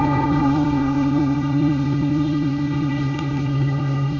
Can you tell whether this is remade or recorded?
remade